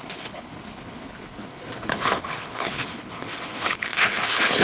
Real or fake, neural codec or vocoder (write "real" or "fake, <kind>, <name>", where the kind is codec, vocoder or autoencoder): fake, codec, HILCodec